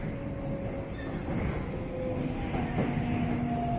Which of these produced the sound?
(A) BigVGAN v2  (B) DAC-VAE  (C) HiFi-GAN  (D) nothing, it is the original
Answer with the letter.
D